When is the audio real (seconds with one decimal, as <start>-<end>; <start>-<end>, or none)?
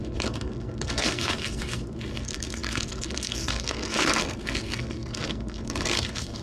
none